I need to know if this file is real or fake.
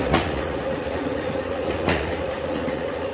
fake